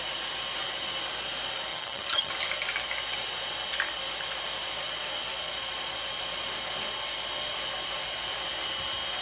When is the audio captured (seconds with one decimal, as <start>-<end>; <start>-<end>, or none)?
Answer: 0.0-1.7; 2.3-9.2